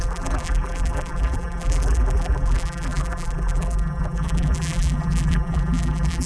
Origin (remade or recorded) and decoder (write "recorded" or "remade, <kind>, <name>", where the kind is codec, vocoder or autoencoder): remade, vocoder, BigVGAN v2